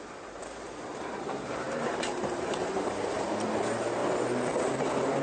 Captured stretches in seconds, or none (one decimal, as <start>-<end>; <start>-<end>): 0.0-0.4; 3.5-5.2